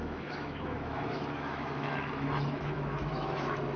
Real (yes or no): no